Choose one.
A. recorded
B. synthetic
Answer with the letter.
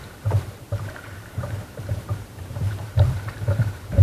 B